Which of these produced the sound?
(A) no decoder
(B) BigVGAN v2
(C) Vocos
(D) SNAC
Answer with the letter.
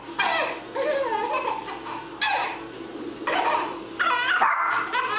A